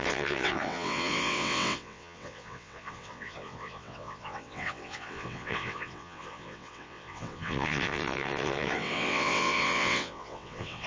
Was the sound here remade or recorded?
remade